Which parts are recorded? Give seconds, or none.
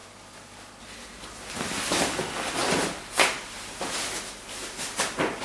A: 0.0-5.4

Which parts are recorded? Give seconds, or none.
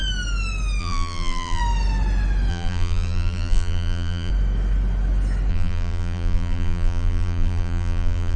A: 0.0-0.8; 1.6-2.5; 4.3-5.5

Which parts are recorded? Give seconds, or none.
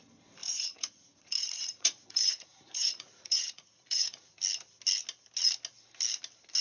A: 0.0-0.4; 4.4-6.6